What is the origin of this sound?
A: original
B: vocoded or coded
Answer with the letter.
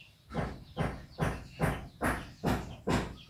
A